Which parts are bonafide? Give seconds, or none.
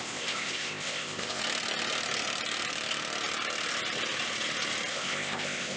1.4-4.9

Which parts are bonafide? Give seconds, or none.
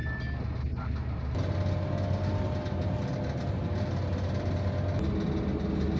0.0-6.0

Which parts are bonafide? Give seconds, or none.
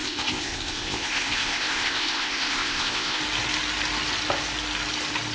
3.2-5.3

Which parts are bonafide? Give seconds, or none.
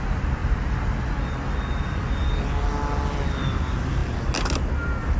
0.0-5.2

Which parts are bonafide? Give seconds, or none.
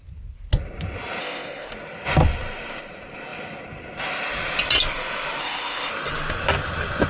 0.0-1.2; 1.7-5.4; 5.9-7.1